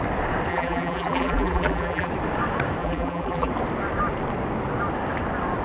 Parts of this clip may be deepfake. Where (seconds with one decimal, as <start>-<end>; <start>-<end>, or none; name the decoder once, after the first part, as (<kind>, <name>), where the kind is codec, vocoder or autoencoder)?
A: 0.5-2.1 (vocoder, BigVGAN v2); 2.8-3.5